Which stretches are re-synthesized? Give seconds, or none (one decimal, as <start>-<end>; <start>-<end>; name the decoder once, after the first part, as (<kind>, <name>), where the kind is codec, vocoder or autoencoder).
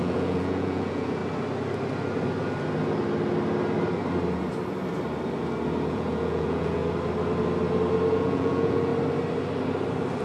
0.0-1.2 (vocoder, Vocos); 5.9-6.8; 8.1-8.9